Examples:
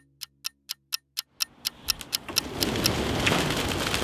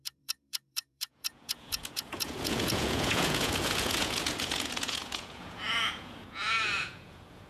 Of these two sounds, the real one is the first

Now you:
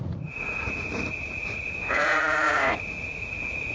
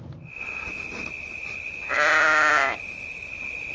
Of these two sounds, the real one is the second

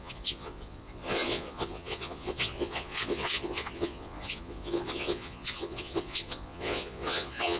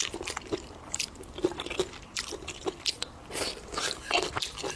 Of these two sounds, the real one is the second